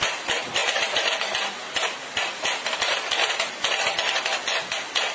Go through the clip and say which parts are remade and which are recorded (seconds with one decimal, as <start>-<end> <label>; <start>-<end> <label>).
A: 0.0-5.1 recorded